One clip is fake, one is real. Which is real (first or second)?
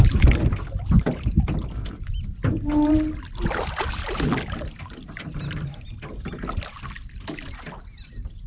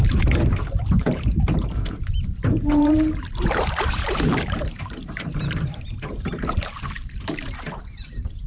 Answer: first